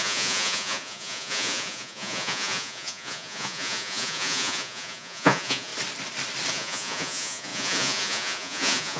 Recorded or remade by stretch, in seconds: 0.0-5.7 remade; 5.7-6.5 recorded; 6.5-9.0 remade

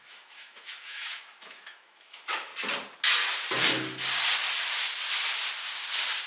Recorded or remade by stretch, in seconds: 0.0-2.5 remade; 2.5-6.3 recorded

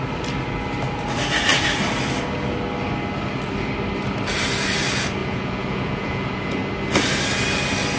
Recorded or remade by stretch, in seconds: 0.0-5.2 recorded; 5.2-6.6 remade; 6.6-8.0 recorded

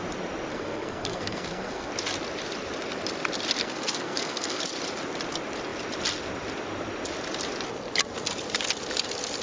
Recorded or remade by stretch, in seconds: 0.0-0.5 recorded; 0.5-1.9 remade; 1.9-3.6 recorded; 3.6-4.6 remade; 4.6-9.4 recorded

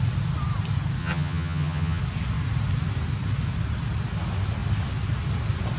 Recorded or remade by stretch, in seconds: 0.0-1.0 recorded; 1.0-2.0 remade; 2.0-5.8 recorded

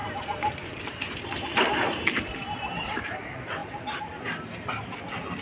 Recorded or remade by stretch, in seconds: 0.0-3.0 remade; 3.0-3.6 recorded; 3.6-4.2 remade; 4.2-5.4 recorded

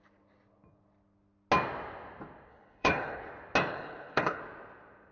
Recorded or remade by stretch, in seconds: 0.0-2.5 recorded; 2.5-3.3 remade; 3.3-3.7 recorded; 3.7-4.4 remade; 4.4-5.1 recorded

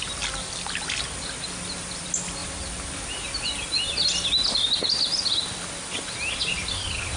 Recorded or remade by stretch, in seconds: 0.0-7.2 recorded